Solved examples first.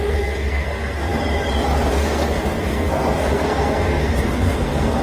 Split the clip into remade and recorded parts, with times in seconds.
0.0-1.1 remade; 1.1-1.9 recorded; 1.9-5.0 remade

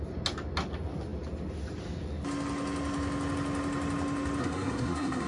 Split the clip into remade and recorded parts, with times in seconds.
0.0-4.4 recorded; 4.4-5.3 remade

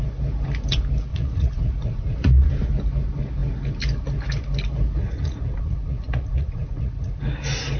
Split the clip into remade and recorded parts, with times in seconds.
0.0-1.1 recorded; 1.1-2.5 remade; 2.5-5.0 recorded; 5.0-7.2 remade; 7.2-7.8 recorded

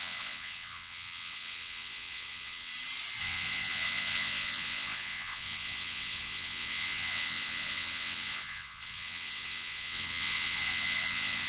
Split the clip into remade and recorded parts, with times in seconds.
0.0-2.7 remade; 2.7-3.2 recorded; 3.2-11.5 remade

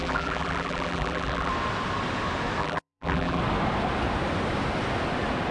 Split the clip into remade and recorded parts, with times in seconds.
0.0-1.5 remade; 1.5-2.6 recorded; 2.6-3.4 remade; 3.4-5.5 recorded